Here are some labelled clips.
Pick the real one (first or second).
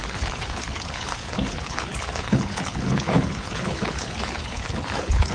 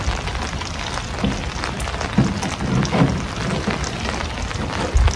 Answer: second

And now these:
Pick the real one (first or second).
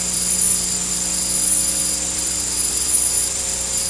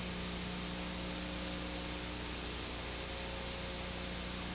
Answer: second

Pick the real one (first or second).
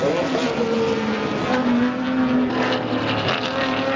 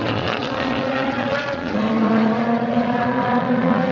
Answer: first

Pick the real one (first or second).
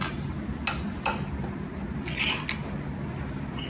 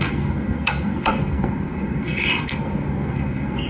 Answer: first